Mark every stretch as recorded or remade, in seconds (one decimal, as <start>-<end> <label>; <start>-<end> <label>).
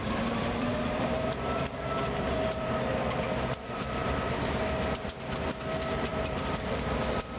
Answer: 0.0-4.4 remade; 4.4-6.1 recorded; 6.1-7.4 remade